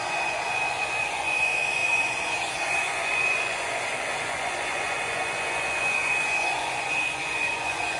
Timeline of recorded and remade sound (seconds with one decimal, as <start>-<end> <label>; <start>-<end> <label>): 0.0-8.0 remade